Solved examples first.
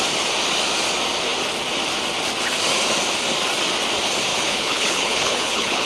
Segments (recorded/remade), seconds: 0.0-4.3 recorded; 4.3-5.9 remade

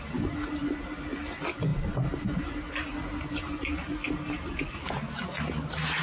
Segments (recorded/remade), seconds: 0.0-6.0 recorded

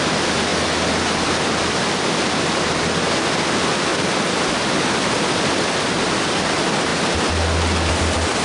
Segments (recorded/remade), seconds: 0.0-3.9 recorded; 3.9-4.5 remade; 4.5-8.4 recorded